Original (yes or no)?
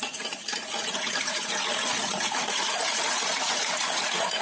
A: no